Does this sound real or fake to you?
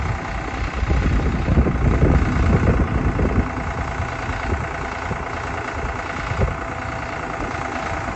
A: real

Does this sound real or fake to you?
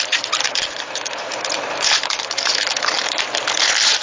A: fake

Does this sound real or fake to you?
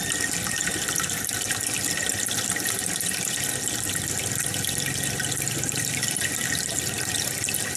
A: real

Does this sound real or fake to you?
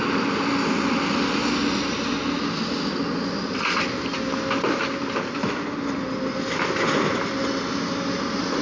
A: real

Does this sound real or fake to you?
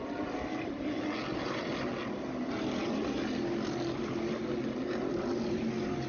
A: real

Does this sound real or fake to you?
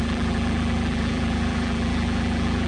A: fake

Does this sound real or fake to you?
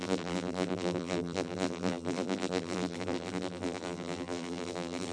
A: fake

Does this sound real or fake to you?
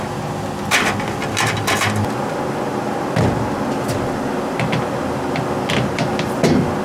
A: real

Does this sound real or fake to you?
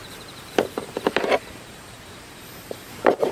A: fake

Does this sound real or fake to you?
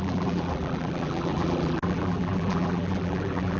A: fake